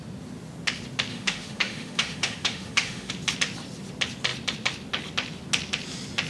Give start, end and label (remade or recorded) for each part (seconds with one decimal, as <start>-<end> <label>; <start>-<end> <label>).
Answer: 0.0-1.1 recorded; 1.1-3.1 remade; 3.1-6.3 recorded